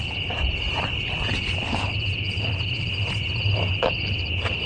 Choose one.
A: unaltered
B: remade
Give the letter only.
A